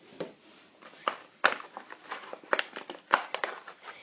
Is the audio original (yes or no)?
yes